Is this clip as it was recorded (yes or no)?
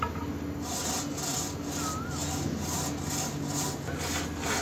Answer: yes